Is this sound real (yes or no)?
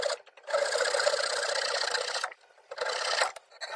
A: yes